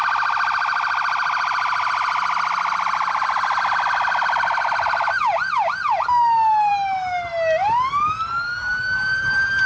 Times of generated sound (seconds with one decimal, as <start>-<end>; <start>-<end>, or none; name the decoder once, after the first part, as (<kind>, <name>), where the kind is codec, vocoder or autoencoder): none